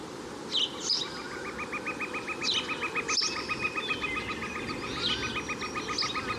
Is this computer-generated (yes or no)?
no